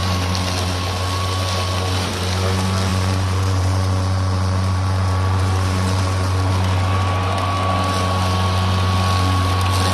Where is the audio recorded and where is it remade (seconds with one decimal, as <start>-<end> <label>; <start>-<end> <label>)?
0.0-2.9 recorded; 2.9-6.5 remade; 6.5-9.9 recorded